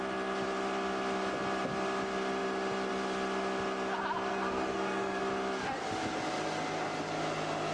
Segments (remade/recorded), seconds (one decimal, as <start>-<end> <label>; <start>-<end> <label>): 0.0-4.3 recorded; 4.3-5.2 remade; 5.2-7.7 recorded

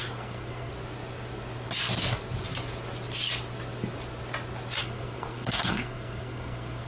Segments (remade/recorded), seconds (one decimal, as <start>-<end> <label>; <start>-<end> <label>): 0.0-0.7 remade; 0.7-4.8 recorded; 4.8-6.9 remade

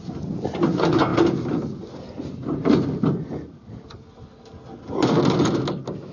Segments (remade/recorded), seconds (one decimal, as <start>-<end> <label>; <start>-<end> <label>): 0.0-6.1 recorded

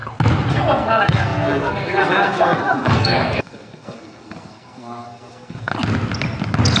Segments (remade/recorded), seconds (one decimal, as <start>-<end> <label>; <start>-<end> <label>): 0.0-0.5 recorded; 0.5-5.7 remade; 5.7-6.8 recorded

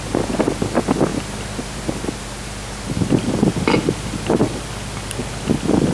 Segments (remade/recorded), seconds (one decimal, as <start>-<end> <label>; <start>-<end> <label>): 0.0-5.9 recorded

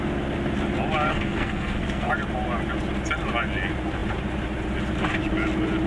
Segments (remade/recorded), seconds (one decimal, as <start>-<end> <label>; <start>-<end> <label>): 0.0-1.1 recorded; 1.1-2.1 remade; 2.1-5.9 recorded